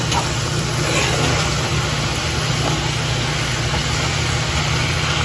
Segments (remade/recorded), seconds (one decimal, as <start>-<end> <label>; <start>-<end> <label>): 0.0-5.2 recorded